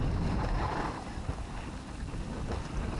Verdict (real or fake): real